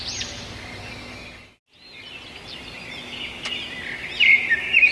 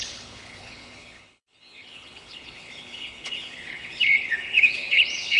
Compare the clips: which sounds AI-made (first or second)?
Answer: second